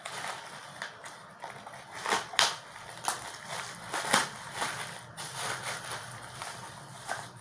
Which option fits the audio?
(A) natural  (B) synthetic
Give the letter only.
A